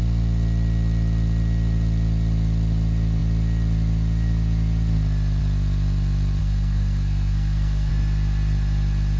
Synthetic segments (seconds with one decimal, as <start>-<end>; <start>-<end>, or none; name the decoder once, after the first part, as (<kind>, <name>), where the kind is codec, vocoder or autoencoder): 6.4-7.9 (codec, SNAC)